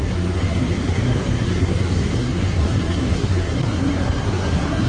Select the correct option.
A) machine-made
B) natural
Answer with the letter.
A